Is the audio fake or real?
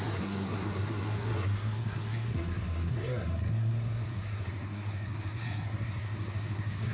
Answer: fake